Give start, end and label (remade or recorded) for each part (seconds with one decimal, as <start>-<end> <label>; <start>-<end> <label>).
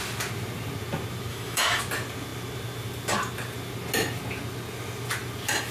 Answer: 0.0-1.3 recorded; 1.3-1.8 remade; 1.8-5.7 recorded